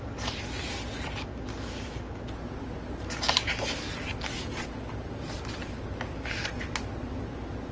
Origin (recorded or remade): recorded